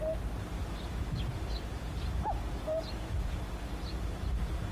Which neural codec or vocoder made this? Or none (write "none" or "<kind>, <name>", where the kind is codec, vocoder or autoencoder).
none